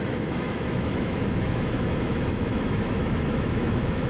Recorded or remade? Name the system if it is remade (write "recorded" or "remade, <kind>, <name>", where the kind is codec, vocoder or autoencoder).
remade, autoencoder, DAC-VAE